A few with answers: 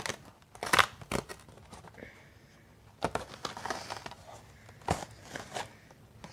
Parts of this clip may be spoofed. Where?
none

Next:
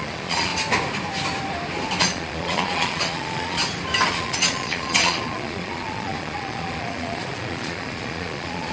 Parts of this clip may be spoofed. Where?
0.0-0.5 (vocoder, Vocos); 2.0-3.6; 4.1-8.7

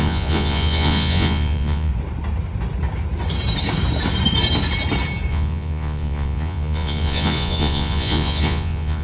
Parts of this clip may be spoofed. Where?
0.0-1.9 (vocoder, Vocos); 5.3-9.0